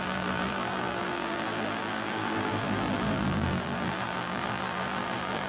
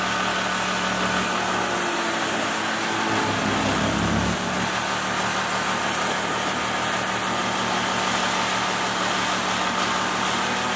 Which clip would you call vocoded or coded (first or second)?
first